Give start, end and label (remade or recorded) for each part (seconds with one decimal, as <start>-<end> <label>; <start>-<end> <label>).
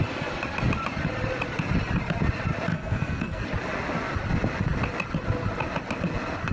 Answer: 0.0-2.7 recorded; 2.7-3.4 remade; 3.4-6.5 recorded